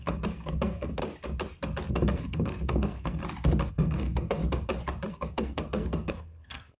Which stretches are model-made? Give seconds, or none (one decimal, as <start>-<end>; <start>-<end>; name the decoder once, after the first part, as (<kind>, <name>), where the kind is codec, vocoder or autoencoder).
0.0-1.0 (codec, SNAC); 1.9-3.2; 3.7-4.4; 5.1-6.8